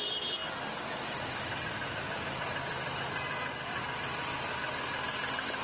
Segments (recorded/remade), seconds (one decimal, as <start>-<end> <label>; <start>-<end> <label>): 0.0-5.6 recorded